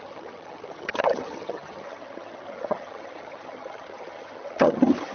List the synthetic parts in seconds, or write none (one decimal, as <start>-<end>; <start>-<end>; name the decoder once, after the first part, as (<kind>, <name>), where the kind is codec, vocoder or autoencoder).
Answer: 0.0-5.1 (vocoder, HiFi-GAN)